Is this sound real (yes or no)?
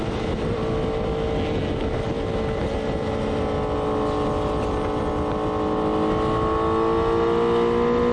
yes